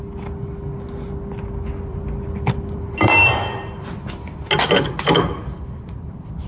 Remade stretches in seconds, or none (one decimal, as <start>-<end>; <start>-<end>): 1.9-4.5

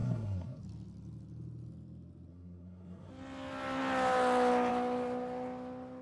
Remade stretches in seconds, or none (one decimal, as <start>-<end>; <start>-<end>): 0.0-0.6; 2.3-3.1

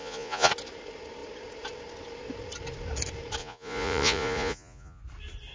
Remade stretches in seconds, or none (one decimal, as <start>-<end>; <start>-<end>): 0.0-0.5; 3.4-5.0

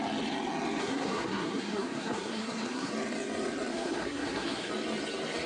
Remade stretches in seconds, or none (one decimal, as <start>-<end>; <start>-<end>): 0.8-2.9; 3.7-4.7

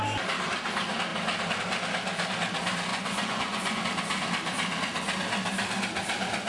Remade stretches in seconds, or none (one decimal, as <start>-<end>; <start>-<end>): 2.9-3.8

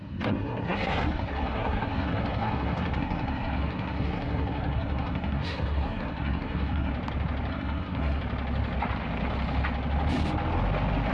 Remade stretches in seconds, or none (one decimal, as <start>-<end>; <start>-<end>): 0.0-6.9; 7.5-8.2

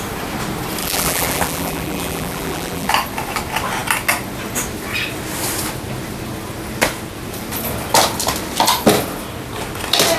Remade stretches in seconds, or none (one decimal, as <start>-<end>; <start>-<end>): 0.8-2.9